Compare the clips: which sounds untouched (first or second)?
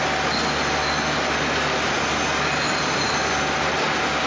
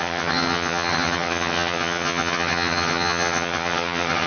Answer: first